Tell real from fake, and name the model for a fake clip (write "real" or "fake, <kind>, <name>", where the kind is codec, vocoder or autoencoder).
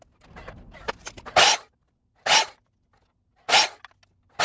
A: real